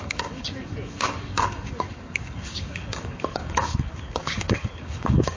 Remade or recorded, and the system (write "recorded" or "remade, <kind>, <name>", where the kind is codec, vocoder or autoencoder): remade, codec, DAC